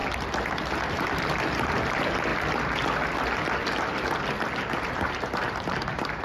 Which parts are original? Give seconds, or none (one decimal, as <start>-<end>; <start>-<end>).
0.0-1.9; 2.3-4.8